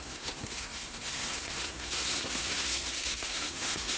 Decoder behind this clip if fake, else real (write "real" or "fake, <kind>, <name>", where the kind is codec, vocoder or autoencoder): fake, codec, SNAC